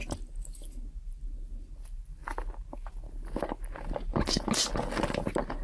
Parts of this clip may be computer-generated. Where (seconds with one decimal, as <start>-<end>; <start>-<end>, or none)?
none